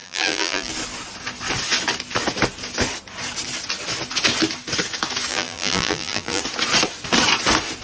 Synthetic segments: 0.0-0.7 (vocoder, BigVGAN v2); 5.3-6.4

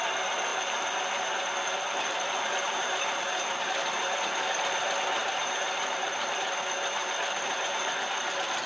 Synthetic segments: 0.5-4.2 (vocoder, BigVGAN v2); 5.2-6.6; 7.0-7.8

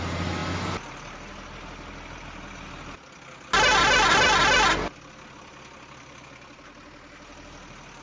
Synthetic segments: none

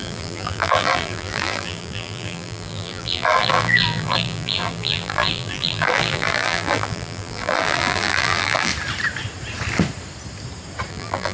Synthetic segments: 0.0-8.7 (vocoder, BigVGAN v2); 10.9-11.3

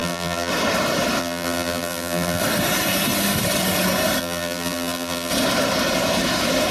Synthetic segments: 0.0-0.5 (vocoder, BigVGAN v2); 1.2-2.4; 4.2-5.3

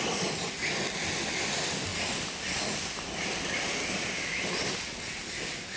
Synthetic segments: 1.9-5.8 (vocoder, BigVGAN v2)

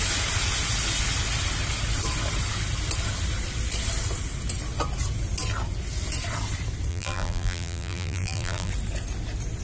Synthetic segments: 6.9-8.7 (vocoder, BigVGAN v2)